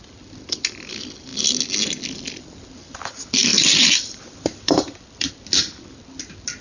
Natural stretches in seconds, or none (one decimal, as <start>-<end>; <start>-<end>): 0.0-3.5; 5.3-6.6